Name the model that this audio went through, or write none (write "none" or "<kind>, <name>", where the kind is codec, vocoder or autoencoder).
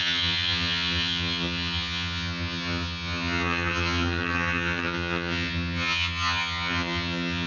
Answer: vocoder, HiFi-GAN